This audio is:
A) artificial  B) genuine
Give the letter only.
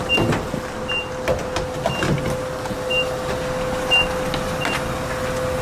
B